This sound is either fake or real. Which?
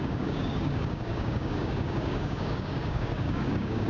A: fake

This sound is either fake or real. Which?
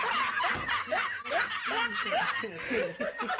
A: real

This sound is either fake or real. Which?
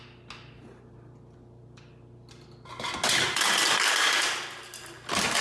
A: real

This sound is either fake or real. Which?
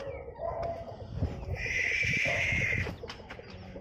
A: real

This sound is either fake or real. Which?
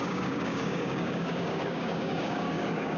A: fake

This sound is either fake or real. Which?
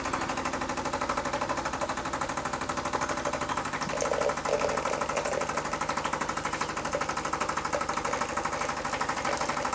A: real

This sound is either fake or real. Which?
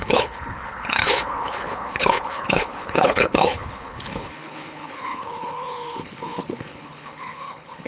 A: fake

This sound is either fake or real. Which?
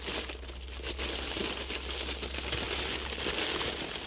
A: real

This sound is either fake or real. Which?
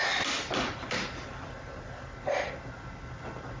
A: real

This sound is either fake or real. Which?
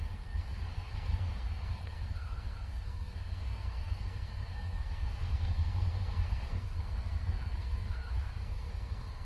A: fake